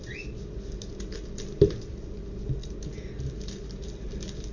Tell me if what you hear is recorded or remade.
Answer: recorded